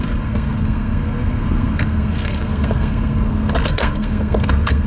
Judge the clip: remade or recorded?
remade